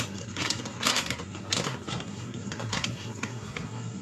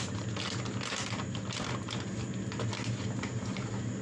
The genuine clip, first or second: second